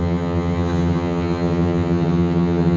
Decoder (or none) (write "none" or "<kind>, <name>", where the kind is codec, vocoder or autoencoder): vocoder, HiFi-GAN